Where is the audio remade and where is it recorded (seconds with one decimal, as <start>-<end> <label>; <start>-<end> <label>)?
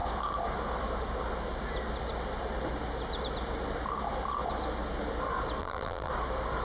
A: 0.0-5.6 recorded; 5.6-6.1 remade; 6.1-6.6 recorded